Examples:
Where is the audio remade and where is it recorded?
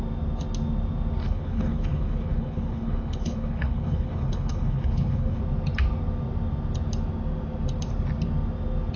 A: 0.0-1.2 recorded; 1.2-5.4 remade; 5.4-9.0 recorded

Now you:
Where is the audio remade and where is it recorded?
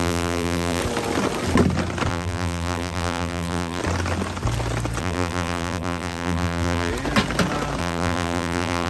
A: 0.0-0.8 remade; 0.8-2.1 recorded; 2.1-3.8 remade; 3.8-5.0 recorded; 5.0-6.9 remade; 6.9-7.8 recorded; 7.8-8.9 remade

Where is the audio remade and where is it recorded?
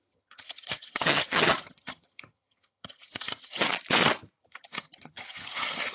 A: 0.0-3.7 remade; 3.7-4.4 recorded; 4.4-5.9 remade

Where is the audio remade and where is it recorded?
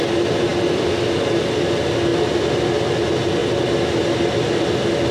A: 0.0-5.1 recorded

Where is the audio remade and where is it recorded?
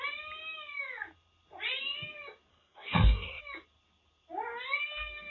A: 0.0-2.5 recorded; 2.5-3.4 remade; 3.4-5.3 recorded